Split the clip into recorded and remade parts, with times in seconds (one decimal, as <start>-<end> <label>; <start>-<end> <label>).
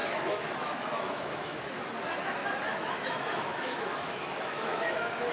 0.0-1.8 remade; 1.8-2.4 recorded; 2.4-5.3 remade